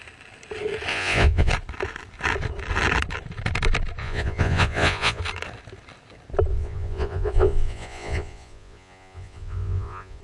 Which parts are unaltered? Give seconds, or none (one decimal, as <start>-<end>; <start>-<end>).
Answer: 0.0-0.9; 1.5-4.0; 5.2-6.5